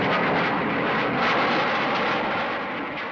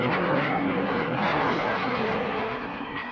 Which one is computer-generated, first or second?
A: second